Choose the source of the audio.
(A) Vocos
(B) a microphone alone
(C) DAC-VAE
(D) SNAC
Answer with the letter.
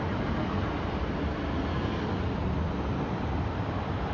B